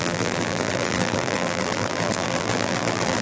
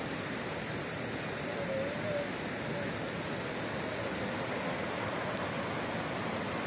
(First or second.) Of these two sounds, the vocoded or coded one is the first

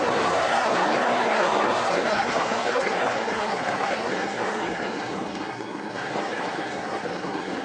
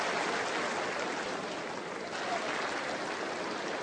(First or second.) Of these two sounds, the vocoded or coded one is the first